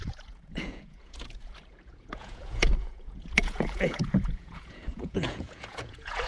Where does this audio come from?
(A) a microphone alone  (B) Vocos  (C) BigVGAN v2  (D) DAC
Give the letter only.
B